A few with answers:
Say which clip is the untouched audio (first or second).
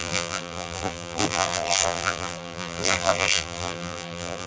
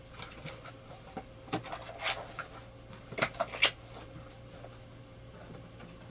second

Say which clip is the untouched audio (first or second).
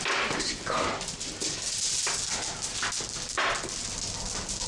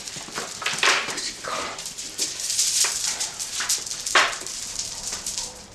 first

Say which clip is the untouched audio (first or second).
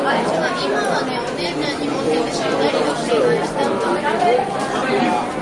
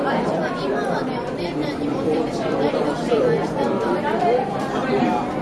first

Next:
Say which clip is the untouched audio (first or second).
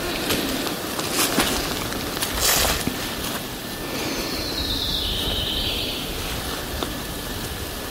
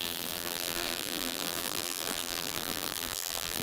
first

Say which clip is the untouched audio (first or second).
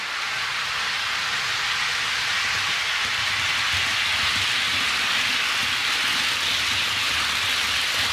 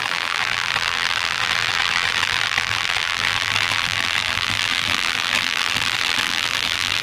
first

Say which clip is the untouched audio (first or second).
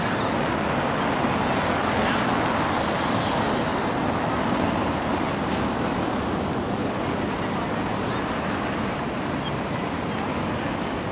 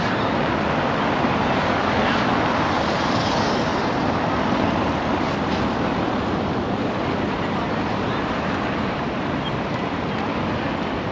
first